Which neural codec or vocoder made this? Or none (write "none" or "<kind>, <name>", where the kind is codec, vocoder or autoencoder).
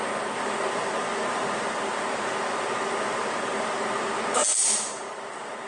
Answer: none